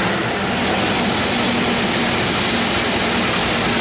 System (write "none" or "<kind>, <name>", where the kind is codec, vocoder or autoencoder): none